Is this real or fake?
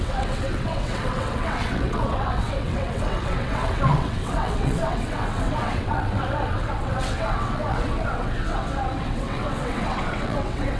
fake